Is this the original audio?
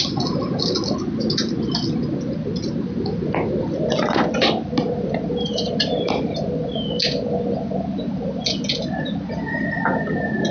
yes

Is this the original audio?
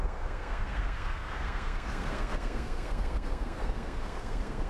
no